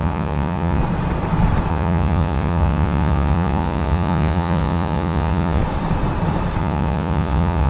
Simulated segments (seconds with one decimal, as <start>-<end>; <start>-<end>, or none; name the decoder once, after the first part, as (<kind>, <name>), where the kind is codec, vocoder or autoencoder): 0.0-0.8 (vocoder, Vocos); 1.7-5.6; 6.6-7.7